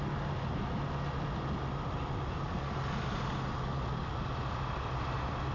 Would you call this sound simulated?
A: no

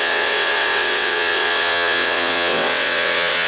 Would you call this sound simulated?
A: yes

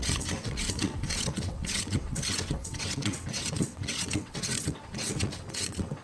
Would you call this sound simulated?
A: yes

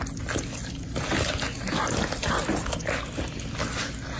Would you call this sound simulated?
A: no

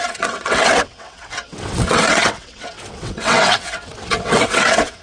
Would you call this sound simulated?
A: yes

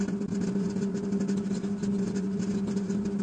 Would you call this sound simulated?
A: no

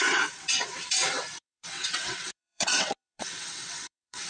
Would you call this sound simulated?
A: yes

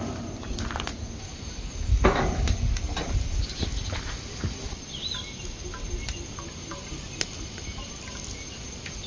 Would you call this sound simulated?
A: no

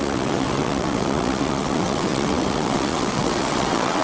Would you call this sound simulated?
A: yes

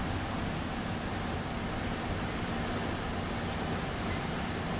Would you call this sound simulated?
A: no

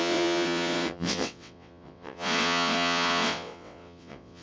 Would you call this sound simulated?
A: yes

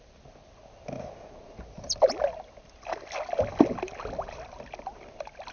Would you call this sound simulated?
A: no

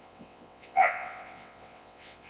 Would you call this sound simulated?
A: yes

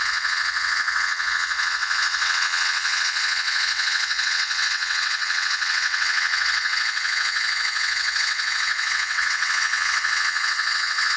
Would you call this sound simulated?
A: yes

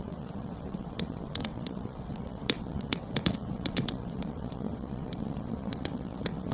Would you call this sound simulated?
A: yes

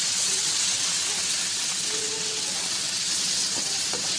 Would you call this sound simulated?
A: yes